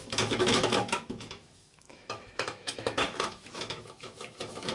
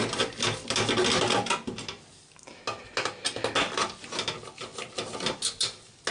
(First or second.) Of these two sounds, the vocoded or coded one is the first